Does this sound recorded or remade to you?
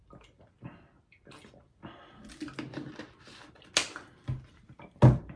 recorded